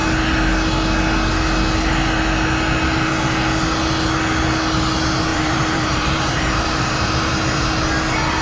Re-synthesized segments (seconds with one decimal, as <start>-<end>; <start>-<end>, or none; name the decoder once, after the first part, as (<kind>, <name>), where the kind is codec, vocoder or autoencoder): 5.3-7.3 (vocoder, BigVGAN v2)